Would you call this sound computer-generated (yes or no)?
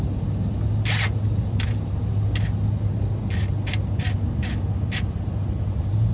no